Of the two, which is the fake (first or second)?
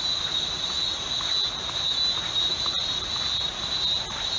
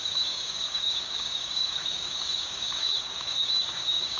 second